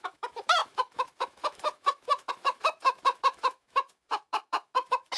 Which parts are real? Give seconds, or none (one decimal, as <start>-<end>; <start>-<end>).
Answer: none